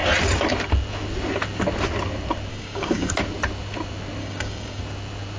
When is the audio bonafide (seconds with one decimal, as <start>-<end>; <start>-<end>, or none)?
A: 0.0-2.5; 3.1-4.2; 4.8-5.4